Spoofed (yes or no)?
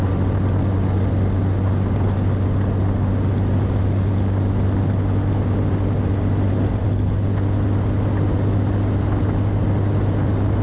no